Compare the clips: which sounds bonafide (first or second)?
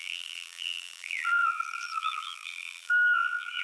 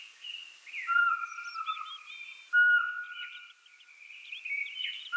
second